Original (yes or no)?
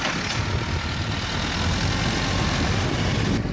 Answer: yes